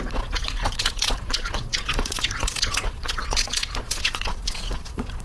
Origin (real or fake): fake